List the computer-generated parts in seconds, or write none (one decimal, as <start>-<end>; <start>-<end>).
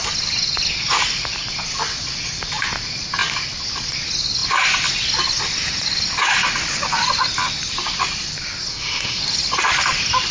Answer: 8.7-9.2